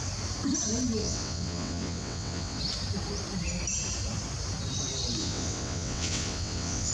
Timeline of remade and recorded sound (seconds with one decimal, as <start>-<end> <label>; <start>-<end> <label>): 0.0-1.0 recorded; 1.0-2.6 remade; 2.6-5.2 recorded; 5.2-6.9 remade